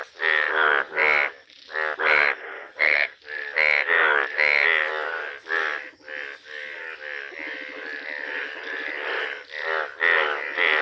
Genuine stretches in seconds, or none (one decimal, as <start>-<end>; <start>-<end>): 0.0-2.4; 3.2-10.8